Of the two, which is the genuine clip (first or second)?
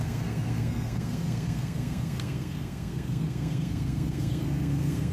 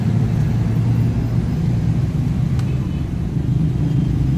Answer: second